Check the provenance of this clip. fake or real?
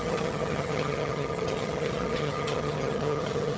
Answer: fake